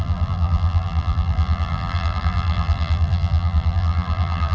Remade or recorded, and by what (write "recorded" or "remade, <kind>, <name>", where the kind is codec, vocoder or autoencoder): remade, vocoder, BigVGAN v2